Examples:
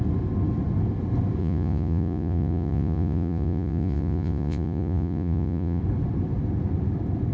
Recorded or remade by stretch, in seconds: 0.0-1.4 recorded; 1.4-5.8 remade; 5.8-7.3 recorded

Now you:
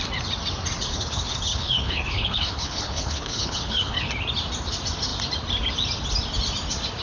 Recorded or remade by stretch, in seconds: 0.0-0.9 recorded; 0.9-4.1 remade; 4.1-7.0 recorded